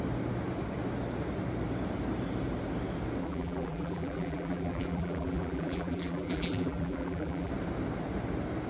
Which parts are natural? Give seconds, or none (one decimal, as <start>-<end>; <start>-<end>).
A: 0.0-3.2; 7.5-8.7